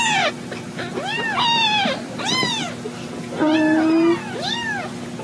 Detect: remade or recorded recorded